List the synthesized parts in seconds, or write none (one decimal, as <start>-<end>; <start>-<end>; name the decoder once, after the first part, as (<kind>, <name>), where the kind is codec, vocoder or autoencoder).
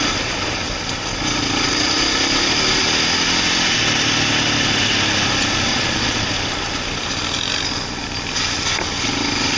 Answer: 5.7-6.2 (vocoder, Vocos)